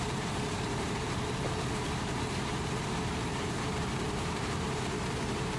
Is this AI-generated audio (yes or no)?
yes